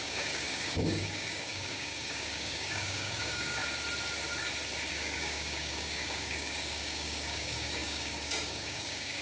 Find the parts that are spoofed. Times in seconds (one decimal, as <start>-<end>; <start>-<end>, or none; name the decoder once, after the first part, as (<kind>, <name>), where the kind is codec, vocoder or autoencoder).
0.0-3.6 (codec, DAC); 4.9-9.2